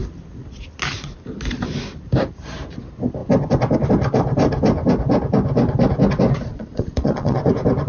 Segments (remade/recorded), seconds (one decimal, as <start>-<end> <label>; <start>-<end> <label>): 0.0-6.5 recorded; 6.5-7.5 remade; 7.5-7.9 recorded